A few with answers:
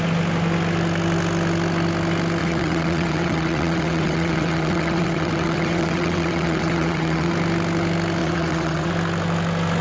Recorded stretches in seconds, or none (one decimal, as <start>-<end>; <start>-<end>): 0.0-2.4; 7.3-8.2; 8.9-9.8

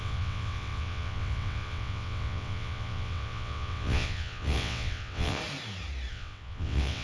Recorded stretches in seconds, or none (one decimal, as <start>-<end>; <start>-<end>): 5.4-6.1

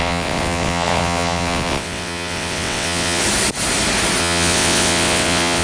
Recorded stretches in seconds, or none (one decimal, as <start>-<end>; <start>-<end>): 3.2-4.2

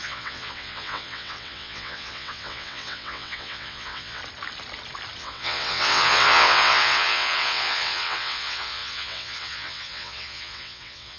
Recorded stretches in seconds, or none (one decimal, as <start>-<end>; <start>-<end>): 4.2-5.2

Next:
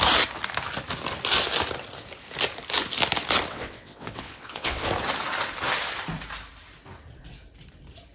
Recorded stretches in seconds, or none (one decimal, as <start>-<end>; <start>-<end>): 0.0-3.5; 4.9-8.1

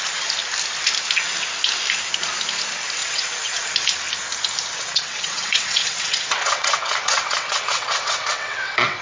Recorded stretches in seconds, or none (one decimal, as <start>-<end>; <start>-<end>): 0.0-3.0; 3.7-4.7

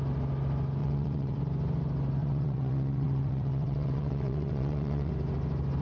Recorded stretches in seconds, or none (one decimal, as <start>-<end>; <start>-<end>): 0.0-0.8; 1.4-2.2; 5.1-5.8

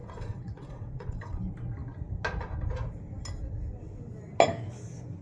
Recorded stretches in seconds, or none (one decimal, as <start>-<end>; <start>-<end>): 1.4-5.2